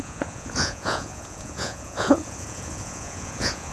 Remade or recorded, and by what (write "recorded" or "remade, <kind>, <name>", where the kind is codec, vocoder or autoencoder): remade, vocoder, Vocos